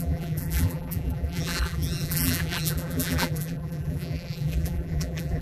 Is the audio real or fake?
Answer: fake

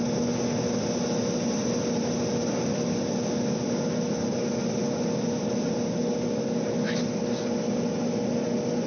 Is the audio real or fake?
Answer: real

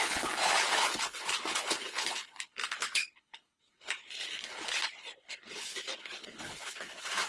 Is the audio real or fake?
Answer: fake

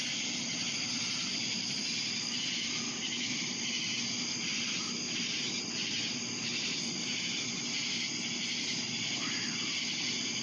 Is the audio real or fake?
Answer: real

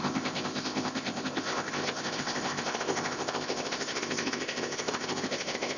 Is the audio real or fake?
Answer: fake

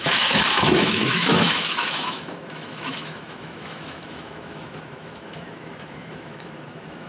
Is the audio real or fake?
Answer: fake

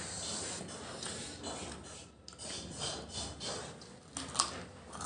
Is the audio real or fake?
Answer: real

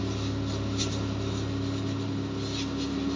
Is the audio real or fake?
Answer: real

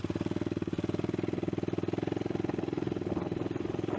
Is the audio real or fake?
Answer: real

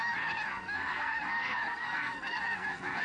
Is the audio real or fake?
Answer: fake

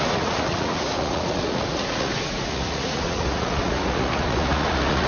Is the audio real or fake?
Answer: fake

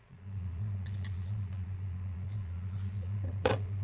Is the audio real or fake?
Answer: fake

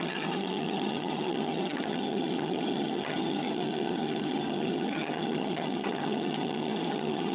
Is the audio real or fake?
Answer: fake